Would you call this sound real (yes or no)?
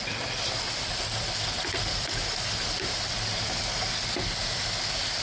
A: yes